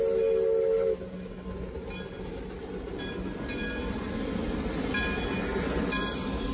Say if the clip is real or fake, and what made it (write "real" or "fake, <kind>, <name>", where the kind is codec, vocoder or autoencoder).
real